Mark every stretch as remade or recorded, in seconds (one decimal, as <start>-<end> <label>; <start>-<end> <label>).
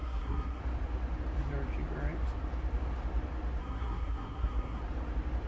0.0-0.6 remade; 0.6-3.6 recorded; 3.6-4.8 remade; 4.8-5.5 recorded